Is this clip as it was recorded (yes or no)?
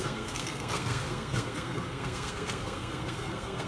no